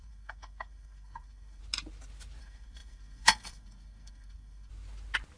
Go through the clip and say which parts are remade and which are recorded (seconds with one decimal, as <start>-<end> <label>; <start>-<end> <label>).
0.0-1.6 remade; 1.6-2.4 recorded; 2.4-4.7 remade; 4.7-5.4 recorded